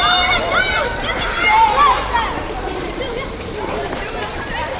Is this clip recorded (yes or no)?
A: no